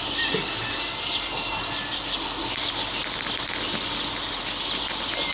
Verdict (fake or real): real